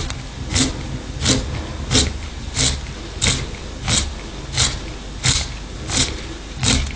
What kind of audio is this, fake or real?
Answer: real